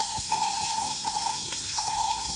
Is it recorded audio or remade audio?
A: remade